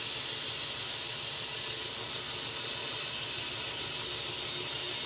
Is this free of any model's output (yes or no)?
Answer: yes